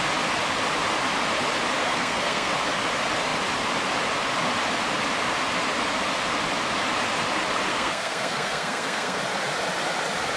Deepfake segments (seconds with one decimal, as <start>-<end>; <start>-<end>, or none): 1.8-2.5; 7.7-9.2